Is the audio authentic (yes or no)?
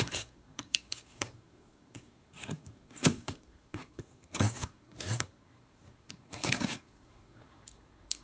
no